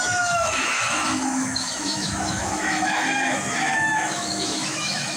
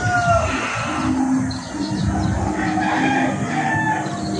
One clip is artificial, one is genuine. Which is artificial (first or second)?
first